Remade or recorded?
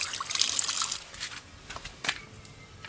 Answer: recorded